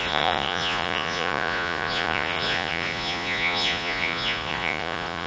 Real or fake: fake